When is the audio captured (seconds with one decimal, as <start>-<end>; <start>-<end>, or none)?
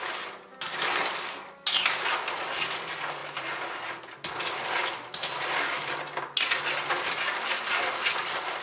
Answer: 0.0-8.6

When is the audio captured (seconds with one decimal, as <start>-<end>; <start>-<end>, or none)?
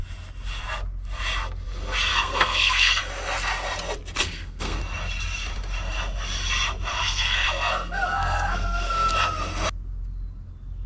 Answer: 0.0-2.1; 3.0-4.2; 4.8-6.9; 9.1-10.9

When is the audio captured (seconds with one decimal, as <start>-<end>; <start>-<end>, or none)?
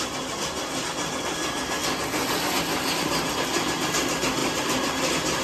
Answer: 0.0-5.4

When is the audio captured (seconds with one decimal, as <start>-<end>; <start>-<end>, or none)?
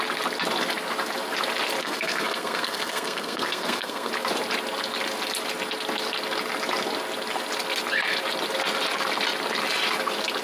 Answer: 0.0-1.8; 4.1-10.4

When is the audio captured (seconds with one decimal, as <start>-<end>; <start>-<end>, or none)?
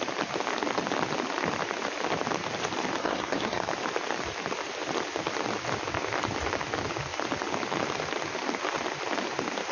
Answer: 0.0-3.0; 3.7-9.7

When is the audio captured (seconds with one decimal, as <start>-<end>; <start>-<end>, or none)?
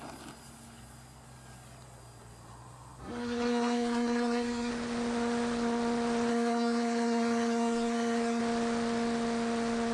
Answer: 0.0-3.0; 4.7-6.3; 8.4-9.9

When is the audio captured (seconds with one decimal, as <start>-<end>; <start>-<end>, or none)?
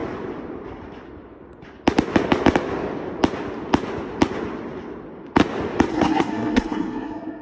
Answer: 0.0-5.9